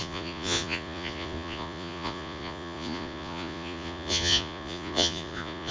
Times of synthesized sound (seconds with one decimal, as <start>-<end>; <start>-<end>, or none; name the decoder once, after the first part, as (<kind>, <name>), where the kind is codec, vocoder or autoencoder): 0.0-5.7 (vocoder, Vocos)